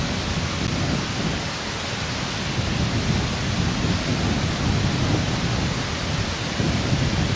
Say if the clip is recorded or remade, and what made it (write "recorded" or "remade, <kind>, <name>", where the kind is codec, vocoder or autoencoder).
recorded